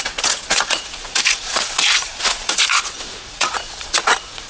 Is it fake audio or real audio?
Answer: fake